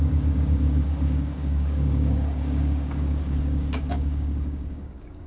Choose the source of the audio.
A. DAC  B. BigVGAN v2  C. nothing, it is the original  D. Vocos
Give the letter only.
A